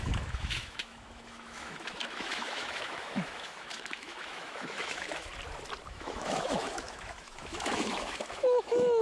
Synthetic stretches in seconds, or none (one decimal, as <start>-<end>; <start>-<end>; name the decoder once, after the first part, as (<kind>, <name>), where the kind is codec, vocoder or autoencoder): 0.0-5.3 (autoencoder, DAC-VAE); 5.9-9.0